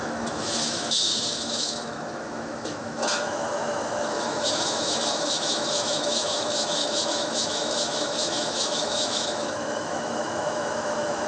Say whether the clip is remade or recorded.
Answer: remade